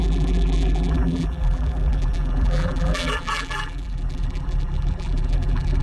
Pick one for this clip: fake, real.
fake